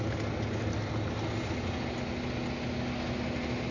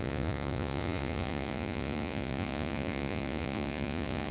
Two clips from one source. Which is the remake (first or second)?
second